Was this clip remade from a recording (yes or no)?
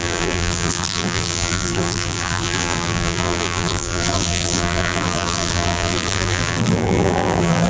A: yes